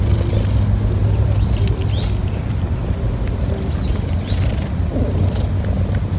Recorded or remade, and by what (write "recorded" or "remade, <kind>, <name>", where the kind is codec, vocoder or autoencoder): recorded